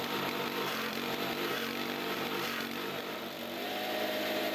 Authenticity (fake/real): real